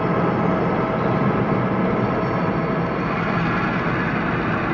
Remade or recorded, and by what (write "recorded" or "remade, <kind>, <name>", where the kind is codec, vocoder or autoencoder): recorded